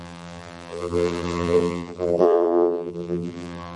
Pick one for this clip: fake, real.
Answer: fake